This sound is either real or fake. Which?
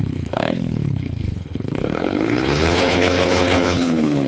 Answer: fake